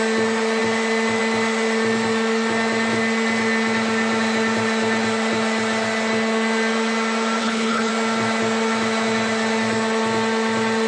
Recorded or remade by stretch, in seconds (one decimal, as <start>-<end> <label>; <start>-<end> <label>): 0.0-7.4 recorded; 7.4-7.9 remade; 7.9-10.9 recorded